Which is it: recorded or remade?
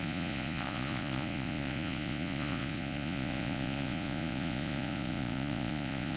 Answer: remade